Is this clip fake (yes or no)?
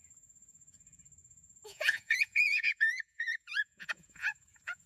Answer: yes